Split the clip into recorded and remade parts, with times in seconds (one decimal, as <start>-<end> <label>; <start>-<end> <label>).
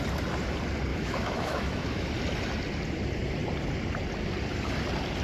0.0-0.9 recorded; 0.9-2.1 remade; 2.1-5.2 recorded